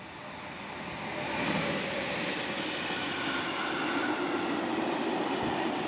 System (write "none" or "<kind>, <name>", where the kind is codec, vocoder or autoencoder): none